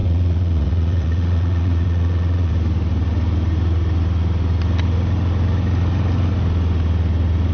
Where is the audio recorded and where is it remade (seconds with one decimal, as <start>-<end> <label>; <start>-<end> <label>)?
0.0-2.5 remade; 2.5-7.5 recorded